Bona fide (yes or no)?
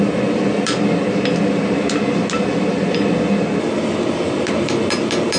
yes